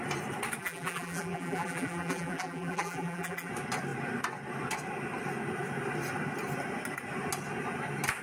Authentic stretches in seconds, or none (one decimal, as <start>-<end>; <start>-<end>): 0.0-0.6; 3.5-8.2